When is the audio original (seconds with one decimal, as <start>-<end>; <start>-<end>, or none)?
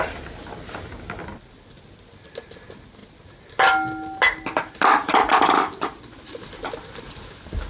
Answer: 0.0-7.7